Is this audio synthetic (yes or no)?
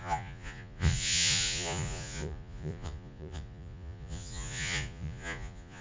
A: yes